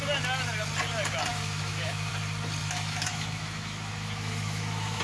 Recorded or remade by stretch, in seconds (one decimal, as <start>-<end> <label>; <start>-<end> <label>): 0.0-1.3 recorded; 1.3-2.1 remade; 2.1-2.6 recorded; 2.6-5.0 remade